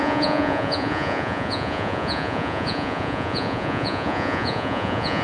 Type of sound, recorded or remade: remade